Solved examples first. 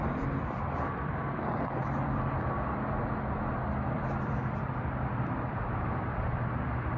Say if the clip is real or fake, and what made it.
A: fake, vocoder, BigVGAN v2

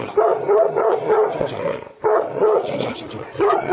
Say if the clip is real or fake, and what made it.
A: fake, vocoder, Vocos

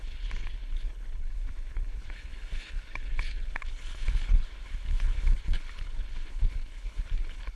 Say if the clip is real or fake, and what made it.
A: fake, codec, HILCodec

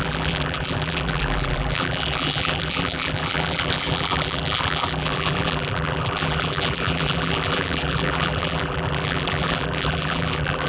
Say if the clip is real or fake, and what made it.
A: fake, vocoder, BigVGAN v2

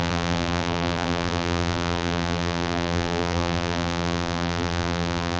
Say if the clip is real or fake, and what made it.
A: fake, vocoder, BigVGAN v2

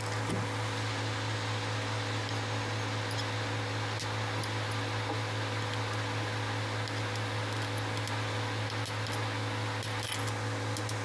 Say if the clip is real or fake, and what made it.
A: real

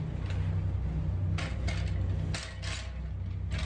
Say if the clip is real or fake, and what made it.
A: real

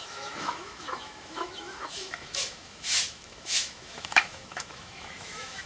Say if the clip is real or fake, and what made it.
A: fake, autoencoder, DAC-VAE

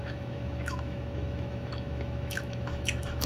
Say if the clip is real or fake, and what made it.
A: fake, autoencoder, DAC-VAE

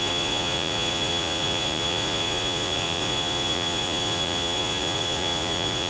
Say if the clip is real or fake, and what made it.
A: fake, vocoder, Vocos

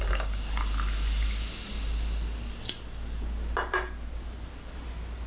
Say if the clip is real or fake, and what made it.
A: real